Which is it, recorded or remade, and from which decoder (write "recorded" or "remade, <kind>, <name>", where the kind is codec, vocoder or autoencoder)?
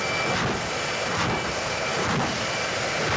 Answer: recorded